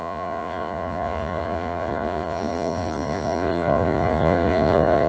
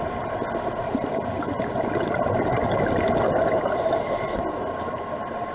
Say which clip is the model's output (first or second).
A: first